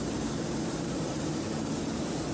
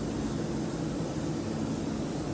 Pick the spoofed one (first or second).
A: first